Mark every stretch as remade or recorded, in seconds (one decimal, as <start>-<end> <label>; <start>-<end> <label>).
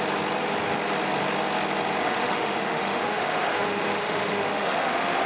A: 0.0-2.0 recorded; 2.0-5.3 remade